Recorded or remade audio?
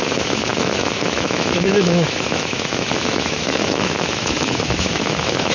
remade